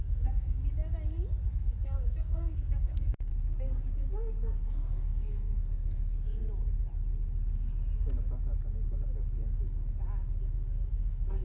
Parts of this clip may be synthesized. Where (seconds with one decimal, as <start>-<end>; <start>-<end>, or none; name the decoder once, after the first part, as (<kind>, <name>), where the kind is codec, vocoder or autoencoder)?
0.0-0.6 (codec, SNAC); 1.5-3.3; 4.1-6.4; 10.9-11.4